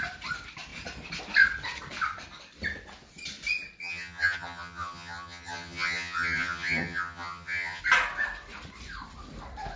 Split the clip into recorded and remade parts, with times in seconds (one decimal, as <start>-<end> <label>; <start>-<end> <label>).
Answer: 0.0-3.8 recorded; 3.8-7.8 remade; 7.8-9.8 recorded